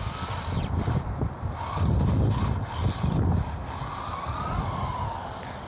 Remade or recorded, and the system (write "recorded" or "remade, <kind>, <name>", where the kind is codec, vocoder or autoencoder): recorded